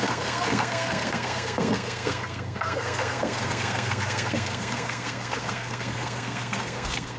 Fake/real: fake